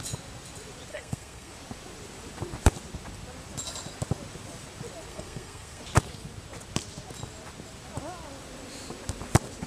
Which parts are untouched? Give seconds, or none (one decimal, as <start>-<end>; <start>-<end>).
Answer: 0.0-0.9; 1.5-5.1; 5.8-9.7